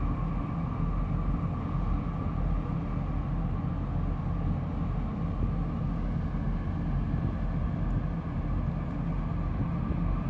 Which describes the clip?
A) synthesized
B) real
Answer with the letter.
B